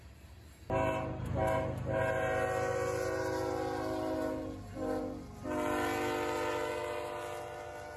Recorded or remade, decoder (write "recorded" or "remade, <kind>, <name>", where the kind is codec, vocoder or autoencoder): recorded